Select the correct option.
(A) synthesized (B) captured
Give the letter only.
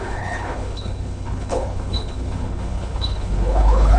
A